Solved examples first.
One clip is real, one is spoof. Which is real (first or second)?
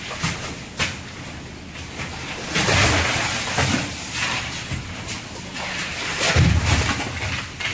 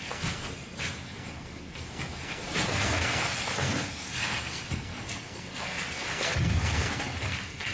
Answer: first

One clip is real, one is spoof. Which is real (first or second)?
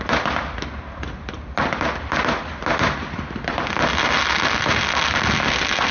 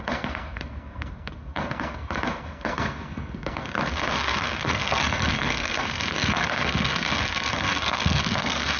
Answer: first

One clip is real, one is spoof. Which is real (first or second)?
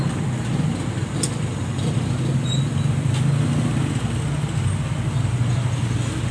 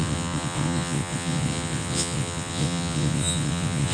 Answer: first